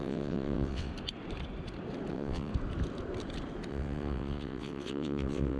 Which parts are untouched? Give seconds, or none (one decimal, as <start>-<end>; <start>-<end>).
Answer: 0.9-2.1; 2.5-3.7